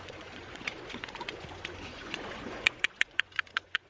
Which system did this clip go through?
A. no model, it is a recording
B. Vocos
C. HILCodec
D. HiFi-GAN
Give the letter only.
B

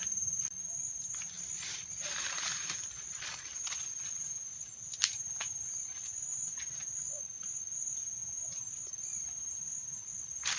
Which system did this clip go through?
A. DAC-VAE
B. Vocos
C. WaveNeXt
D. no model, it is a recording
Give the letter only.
D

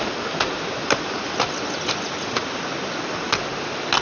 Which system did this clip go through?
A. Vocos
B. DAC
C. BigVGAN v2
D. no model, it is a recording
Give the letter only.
D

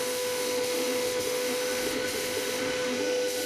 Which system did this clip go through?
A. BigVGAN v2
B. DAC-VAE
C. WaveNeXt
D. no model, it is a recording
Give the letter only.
B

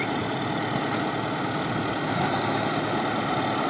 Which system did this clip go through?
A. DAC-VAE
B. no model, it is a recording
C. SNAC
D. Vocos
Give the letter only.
B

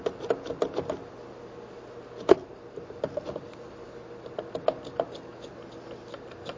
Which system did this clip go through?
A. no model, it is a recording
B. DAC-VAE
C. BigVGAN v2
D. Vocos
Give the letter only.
A